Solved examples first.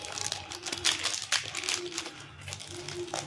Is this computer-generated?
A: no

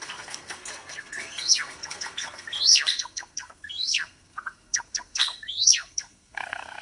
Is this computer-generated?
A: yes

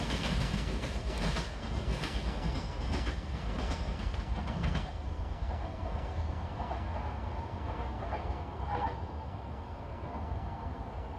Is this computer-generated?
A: yes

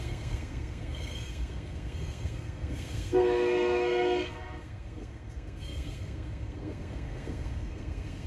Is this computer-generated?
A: yes